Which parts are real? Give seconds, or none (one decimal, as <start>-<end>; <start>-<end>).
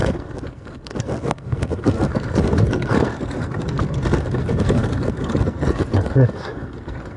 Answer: none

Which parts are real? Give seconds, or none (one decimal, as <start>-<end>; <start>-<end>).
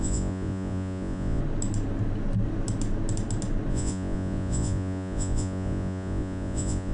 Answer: 1.4-3.7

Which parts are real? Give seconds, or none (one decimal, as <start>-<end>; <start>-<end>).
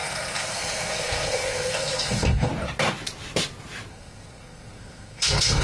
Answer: 2.5-3.9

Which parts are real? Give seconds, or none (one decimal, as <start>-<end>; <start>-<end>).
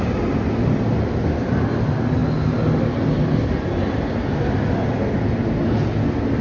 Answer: 0.0-6.4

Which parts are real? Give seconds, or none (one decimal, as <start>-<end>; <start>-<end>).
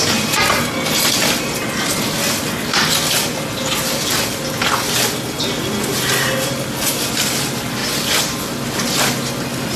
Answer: 0.0-9.8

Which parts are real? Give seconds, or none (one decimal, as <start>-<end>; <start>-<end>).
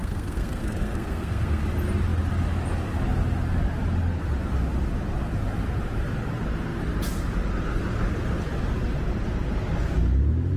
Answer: 1.6-10.6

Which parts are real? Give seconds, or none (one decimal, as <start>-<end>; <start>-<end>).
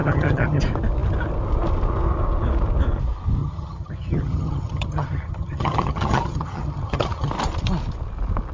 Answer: 0.6-3.4; 7.3-8.5